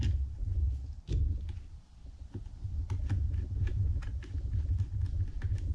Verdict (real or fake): real